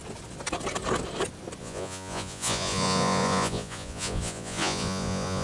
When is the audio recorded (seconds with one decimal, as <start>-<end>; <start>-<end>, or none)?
0.0-1.6